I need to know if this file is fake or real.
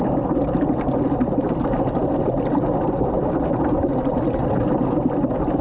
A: real